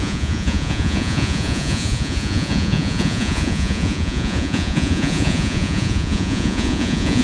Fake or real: fake